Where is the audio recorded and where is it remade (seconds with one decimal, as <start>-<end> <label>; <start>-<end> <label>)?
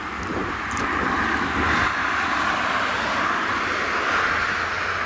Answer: 0.0-0.4 recorded; 0.4-1.2 remade; 1.2-2.0 recorded; 2.0-3.9 remade; 3.9-5.1 recorded